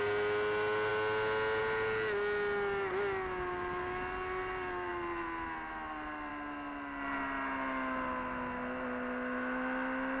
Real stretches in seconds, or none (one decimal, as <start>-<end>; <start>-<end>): 0.0-10.2

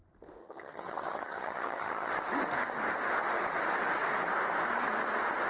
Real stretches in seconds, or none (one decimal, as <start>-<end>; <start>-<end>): 0.0-0.4; 2.1-5.5

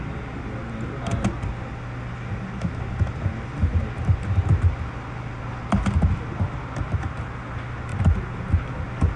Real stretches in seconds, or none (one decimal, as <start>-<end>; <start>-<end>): 0.0-9.2

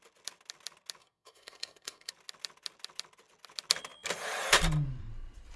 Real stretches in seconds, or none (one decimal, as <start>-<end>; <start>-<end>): 0.0-1.0; 2.1-5.6

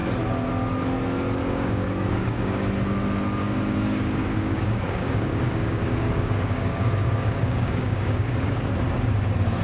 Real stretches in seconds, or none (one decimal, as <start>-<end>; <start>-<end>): 0.0-1.4; 2.6-3.4; 8.7-9.6

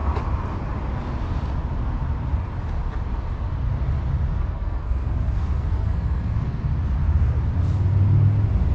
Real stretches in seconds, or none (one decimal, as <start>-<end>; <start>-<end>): 0.0-4.3; 6.6-8.7

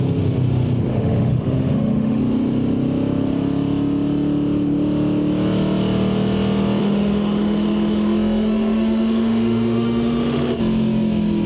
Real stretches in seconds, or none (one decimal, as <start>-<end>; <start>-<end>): 0.0-0.9; 2.2-6.8; 10.6-11.5